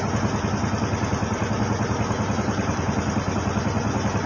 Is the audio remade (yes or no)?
no